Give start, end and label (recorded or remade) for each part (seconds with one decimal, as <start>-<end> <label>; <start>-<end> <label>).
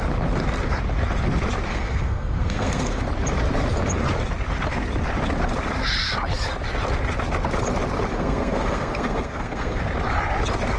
0.0-1.7 recorded; 1.7-3.0 remade; 3.0-8.1 recorded; 8.1-9.8 remade; 9.8-10.8 recorded